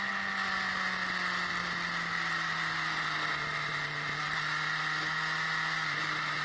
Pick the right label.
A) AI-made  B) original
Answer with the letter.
B